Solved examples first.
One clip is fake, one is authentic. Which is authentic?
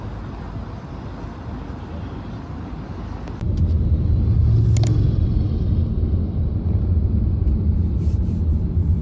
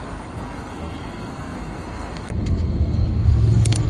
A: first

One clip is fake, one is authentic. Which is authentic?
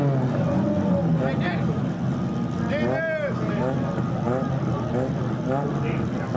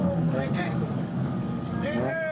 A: first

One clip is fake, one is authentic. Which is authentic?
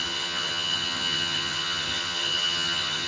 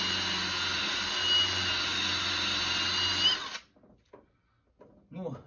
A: second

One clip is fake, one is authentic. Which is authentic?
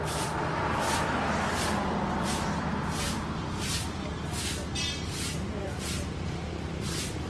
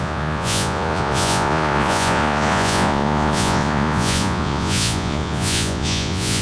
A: first